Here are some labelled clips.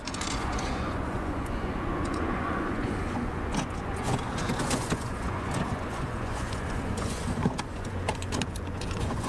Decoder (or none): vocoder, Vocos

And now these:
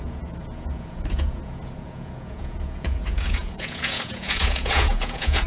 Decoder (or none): vocoder, Vocos